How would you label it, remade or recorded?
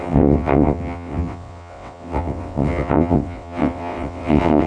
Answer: remade